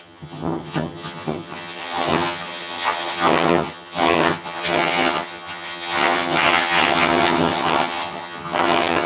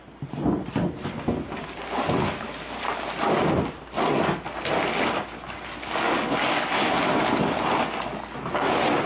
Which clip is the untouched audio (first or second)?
second